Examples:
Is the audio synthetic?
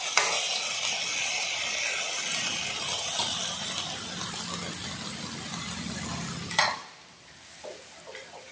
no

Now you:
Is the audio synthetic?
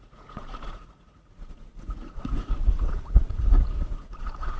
yes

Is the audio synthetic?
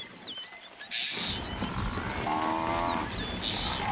no